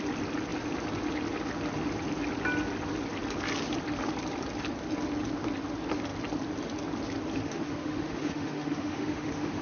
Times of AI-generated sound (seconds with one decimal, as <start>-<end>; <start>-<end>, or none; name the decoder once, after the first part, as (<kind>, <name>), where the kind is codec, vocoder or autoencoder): 7.4-9.6 (autoencoder, DAC-VAE)